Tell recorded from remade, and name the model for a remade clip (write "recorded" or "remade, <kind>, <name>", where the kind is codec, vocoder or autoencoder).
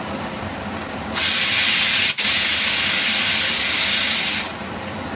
recorded